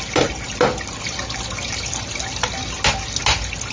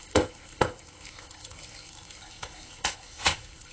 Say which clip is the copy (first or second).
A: second